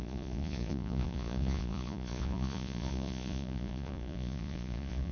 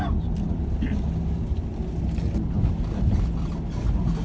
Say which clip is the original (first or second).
second